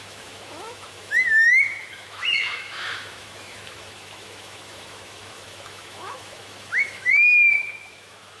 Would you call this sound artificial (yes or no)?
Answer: yes